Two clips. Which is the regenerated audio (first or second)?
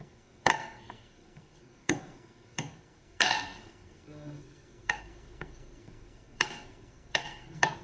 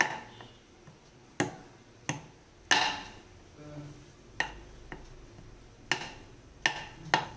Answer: first